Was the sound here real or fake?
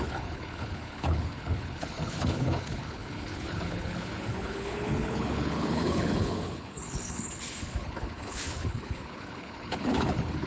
fake